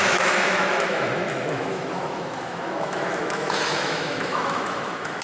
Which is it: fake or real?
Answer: fake